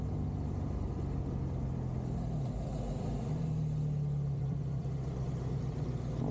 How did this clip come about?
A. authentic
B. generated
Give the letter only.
A